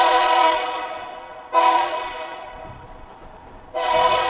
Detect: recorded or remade remade